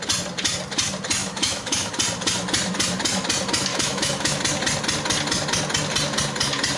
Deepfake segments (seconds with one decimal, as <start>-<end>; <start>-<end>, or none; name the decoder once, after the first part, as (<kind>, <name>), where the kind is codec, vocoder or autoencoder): 1.2-1.9 (autoencoder, DAC-VAE); 3.7-4.4